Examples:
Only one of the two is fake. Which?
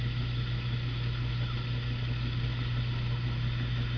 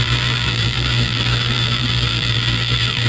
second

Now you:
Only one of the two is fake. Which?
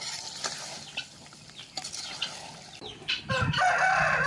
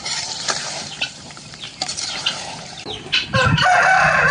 second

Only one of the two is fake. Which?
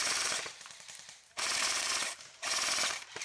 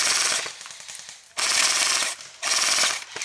first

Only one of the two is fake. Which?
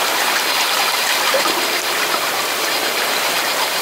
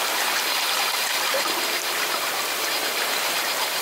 first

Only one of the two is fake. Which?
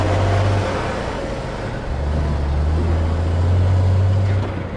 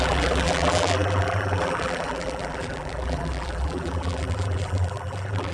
second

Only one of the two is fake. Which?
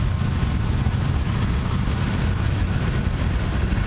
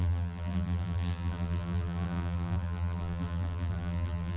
second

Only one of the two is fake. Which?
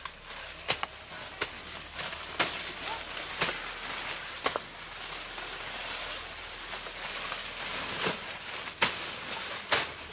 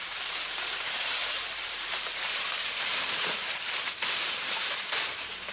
second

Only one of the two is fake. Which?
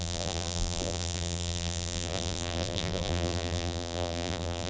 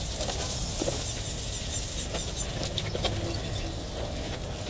first